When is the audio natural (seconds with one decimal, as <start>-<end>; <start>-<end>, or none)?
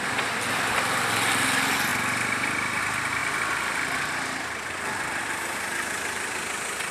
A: 0.0-3.2